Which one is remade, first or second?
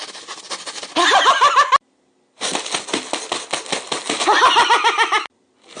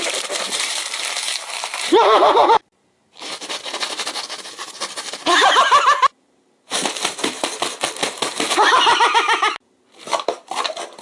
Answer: second